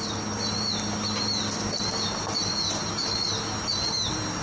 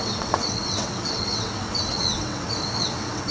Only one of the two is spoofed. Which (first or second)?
second